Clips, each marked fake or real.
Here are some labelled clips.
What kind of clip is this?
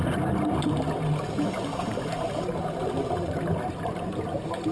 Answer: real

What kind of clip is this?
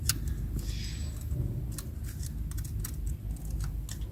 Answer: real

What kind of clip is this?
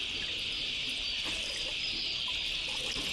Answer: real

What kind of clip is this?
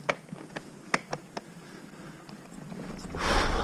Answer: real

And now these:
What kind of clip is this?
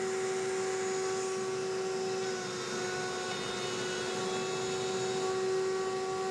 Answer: real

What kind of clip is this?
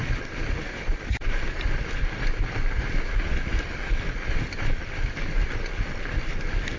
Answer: real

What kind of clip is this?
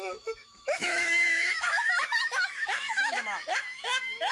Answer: fake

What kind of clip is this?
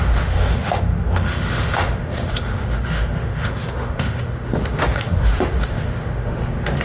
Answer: fake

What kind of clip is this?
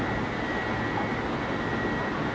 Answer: real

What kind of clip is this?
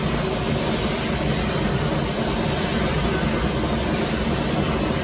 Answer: real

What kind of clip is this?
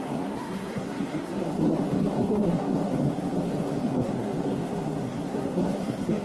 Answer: fake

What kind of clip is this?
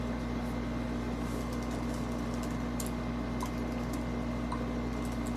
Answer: real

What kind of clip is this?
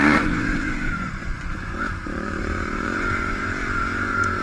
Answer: fake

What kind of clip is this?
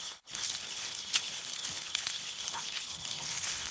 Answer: fake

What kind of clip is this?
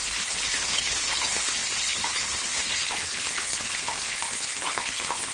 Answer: fake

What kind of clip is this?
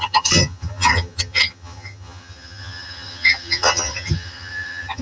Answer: fake